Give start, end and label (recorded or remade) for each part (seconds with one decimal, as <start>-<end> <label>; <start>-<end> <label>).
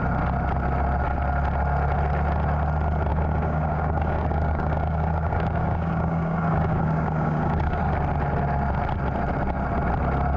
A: 0.0-3.1 recorded; 3.1-7.8 remade; 7.8-10.4 recorded